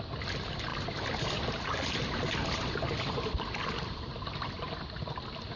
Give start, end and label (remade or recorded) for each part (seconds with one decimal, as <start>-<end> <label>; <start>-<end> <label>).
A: 0.0-5.6 recorded